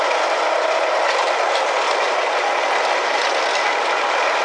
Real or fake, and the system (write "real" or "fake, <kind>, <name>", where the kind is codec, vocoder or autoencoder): real